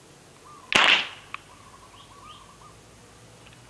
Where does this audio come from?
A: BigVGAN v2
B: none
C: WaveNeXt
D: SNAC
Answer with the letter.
B